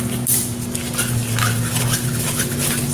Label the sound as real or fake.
real